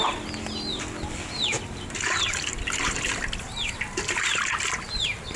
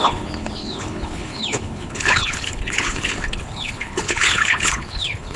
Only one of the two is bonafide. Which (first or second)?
first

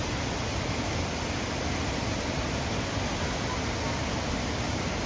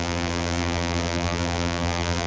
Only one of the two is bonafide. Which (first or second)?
first